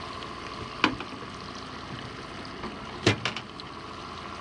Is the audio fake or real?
real